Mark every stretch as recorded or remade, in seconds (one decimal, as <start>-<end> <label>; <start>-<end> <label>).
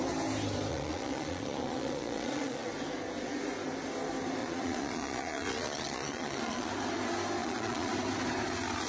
0.0-0.7 recorded; 0.7-2.7 remade; 2.7-4.4 recorded; 4.4-6.7 remade; 6.7-7.4 recorded; 7.4-7.9 remade; 7.9-8.9 recorded